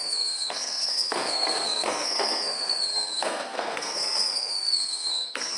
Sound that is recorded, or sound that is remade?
remade